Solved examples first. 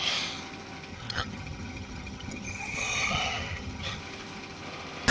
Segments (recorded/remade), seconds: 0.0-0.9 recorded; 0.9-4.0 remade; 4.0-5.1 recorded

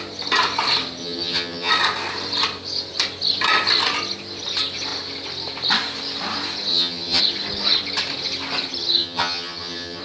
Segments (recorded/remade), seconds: 0.0-1.0 recorded; 1.0-1.7 remade; 1.7-6.7 recorded; 6.7-7.2 remade; 7.2-9.0 recorded; 9.0-10.0 remade

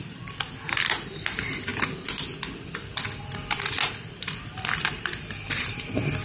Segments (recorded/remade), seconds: 0.0-6.2 recorded